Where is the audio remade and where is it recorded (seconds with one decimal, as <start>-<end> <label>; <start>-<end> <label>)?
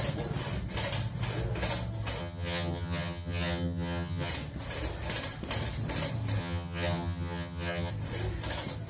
0.0-2.2 recorded; 2.2-4.3 remade; 4.3-6.4 recorded; 6.4-7.9 remade; 7.9-8.9 recorded